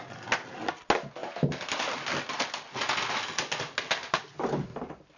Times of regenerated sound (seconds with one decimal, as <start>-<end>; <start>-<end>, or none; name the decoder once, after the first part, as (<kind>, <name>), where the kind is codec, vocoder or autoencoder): none